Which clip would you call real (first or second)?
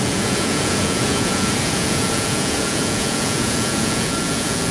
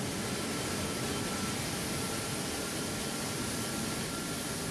second